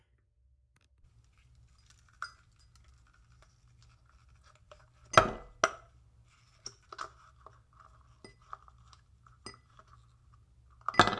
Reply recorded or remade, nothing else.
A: recorded